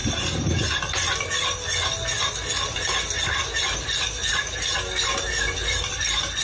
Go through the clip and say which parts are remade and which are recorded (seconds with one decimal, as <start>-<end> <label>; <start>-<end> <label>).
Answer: 0.0-6.4 recorded